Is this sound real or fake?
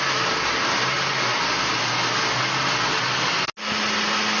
real